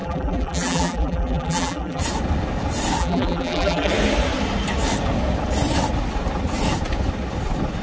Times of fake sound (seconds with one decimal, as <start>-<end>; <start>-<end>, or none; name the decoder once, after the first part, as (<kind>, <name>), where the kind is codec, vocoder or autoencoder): 0.0-2.0 (vocoder, BigVGAN v2); 3.0-3.9